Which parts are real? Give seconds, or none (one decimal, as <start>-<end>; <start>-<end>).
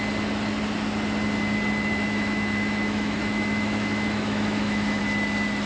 0.0-1.9; 5.0-5.7